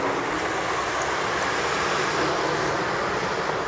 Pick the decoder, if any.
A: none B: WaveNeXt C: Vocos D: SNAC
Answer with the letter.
A